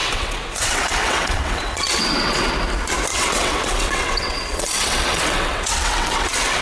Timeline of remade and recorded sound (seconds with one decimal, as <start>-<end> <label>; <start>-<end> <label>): 0.0-2.5 remade; 2.5-3.1 recorded; 3.1-6.6 remade